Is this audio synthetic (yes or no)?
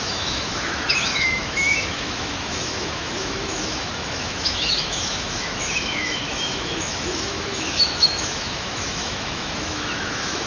yes